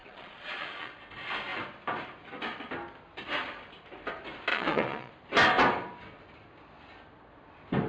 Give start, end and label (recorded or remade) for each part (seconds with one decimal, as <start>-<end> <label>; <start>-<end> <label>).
0.0-0.9 remade; 0.9-4.5 recorded; 4.5-5.1 remade; 5.1-7.9 recorded